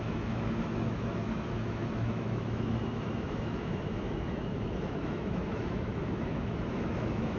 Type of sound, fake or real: fake